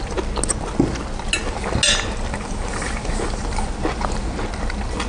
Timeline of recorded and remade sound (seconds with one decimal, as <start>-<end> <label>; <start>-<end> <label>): 0.0-5.1 recorded